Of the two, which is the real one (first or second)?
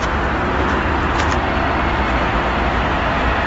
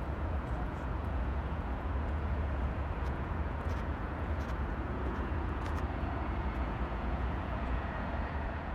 first